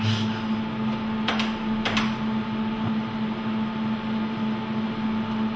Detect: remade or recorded recorded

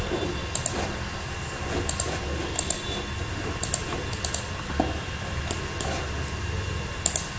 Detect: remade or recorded recorded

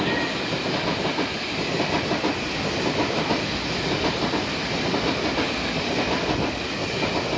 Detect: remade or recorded recorded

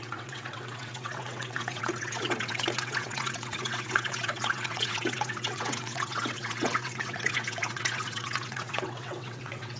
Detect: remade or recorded remade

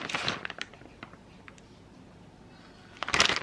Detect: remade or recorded recorded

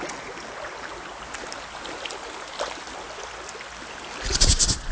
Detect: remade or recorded recorded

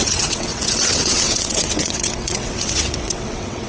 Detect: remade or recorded remade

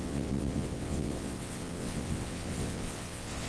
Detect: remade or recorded remade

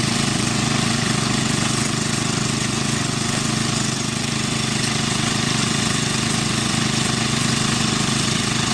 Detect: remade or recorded remade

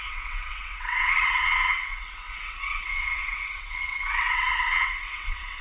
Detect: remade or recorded remade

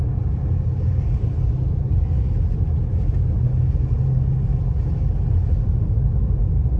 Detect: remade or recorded recorded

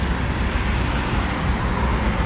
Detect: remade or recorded recorded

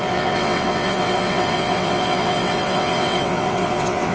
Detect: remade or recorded remade